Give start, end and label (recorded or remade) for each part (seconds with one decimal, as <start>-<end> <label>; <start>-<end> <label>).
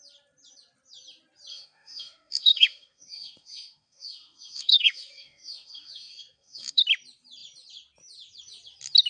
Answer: 0.0-1.5 recorded; 1.5-6.8 remade; 6.8-9.1 recorded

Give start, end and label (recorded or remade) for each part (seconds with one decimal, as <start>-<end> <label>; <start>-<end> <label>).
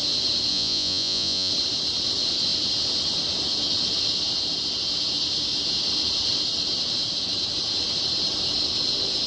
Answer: 0.0-0.5 recorded; 0.5-1.5 remade; 1.5-9.3 recorded